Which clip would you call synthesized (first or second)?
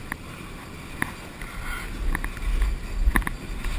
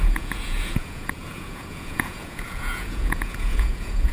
second